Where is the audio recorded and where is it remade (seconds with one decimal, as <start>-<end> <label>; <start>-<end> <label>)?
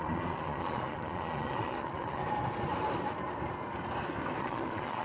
0.0-2.2 remade; 2.2-4.4 recorded; 4.4-5.0 remade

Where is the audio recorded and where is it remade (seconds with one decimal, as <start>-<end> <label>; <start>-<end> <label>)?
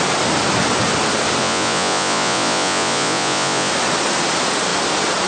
0.0-1.4 recorded; 1.4-3.7 remade; 3.7-5.3 recorded